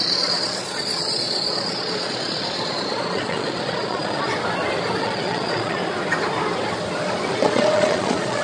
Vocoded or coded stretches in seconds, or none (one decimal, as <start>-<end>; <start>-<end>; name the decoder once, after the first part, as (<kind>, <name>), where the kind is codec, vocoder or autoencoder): 0.0-4.3 (vocoder, Vocos); 5.0-5.8; 7.3-8.4